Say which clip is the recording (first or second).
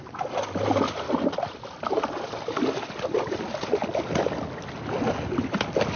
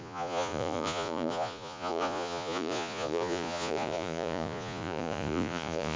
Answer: first